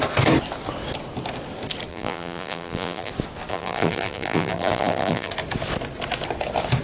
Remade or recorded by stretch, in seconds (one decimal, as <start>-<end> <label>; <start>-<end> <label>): 0.0-1.9 recorded; 1.9-3.1 remade; 3.1-3.5 recorded; 3.5-5.3 remade; 5.3-6.8 recorded